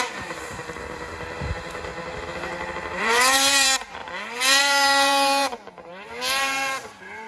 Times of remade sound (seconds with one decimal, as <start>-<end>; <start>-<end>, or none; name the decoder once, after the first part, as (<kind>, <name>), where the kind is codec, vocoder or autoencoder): 0.0-1.9 (vocoder, BigVGAN v2); 2.7-7.3